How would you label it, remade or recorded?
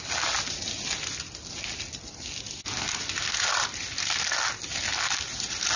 recorded